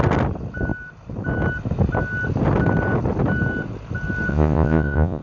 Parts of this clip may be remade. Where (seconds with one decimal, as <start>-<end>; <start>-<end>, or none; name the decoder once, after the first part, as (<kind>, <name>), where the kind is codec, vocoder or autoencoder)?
4.3-5.2 (vocoder, Vocos)